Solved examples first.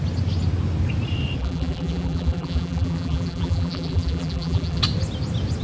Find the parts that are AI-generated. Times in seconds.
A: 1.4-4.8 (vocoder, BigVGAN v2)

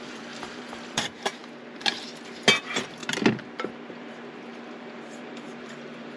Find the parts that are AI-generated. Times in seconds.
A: 0.0-1.4 (vocoder, BigVGAN v2); 2.6-3.0; 3.9-6.2

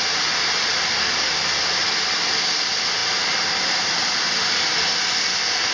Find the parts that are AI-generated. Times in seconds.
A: 3.0-4.2 (vocoder, BigVGAN v2)